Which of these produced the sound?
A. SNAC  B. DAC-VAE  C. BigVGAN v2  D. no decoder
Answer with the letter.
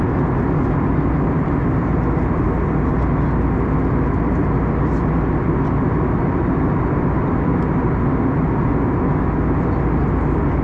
D